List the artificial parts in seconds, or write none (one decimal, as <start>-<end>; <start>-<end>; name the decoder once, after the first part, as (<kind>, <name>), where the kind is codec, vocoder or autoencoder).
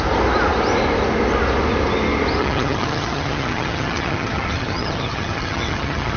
2.4-6.2 (vocoder, HiFi-GAN)